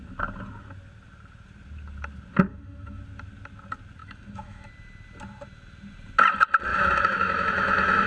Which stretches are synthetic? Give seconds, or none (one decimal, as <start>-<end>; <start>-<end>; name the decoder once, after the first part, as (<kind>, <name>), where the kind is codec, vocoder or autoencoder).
2.5-3.0 (autoencoder, DAC-VAE); 4.0-4.7; 6.7-8.1

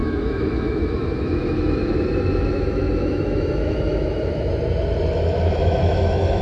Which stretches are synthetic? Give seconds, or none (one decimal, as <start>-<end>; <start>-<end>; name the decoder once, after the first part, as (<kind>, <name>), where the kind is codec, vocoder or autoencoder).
0.0-4.5 (autoencoder, DAC-VAE); 5.1-6.4

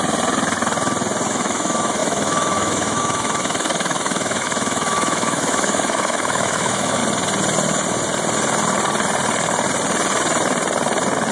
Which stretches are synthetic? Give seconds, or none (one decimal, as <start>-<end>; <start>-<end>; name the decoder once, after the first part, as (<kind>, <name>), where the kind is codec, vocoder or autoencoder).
1.3-7.0 (autoencoder, DAC-VAE)